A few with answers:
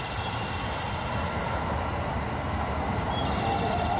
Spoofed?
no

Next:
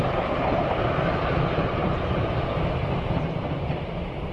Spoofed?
no